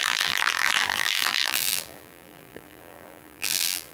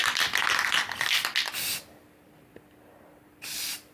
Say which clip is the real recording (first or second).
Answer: second